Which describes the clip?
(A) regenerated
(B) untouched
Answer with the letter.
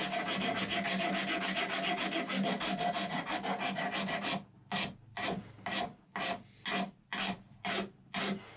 B